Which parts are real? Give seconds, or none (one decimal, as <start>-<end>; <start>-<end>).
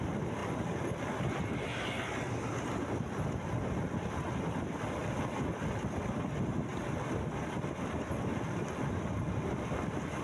0.0-6.7; 8.6-10.2